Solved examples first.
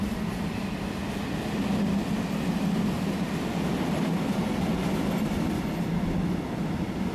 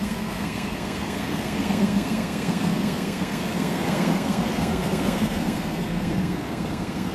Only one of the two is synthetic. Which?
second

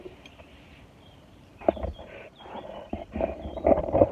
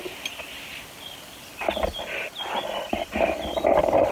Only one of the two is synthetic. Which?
first